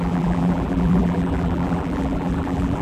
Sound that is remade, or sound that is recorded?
remade